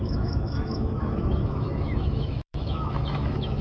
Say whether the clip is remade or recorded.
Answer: remade